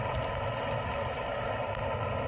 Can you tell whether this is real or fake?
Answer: real